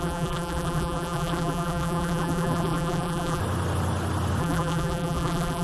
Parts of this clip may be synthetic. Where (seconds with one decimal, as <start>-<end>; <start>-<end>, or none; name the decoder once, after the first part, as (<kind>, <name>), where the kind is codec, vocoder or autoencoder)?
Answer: 0.0-3.4 (vocoder, BigVGAN v2); 4.4-5.6